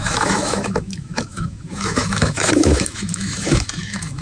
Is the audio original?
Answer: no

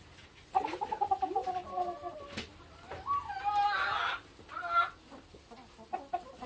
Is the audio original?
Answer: yes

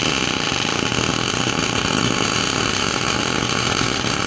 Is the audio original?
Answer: yes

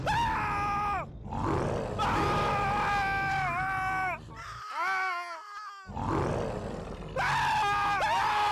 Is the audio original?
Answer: yes